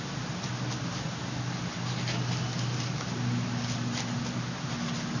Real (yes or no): yes